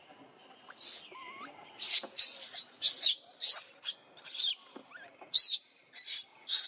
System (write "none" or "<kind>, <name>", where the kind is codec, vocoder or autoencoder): none